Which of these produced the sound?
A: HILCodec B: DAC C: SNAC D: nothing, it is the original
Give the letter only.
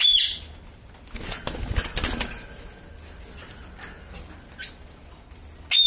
D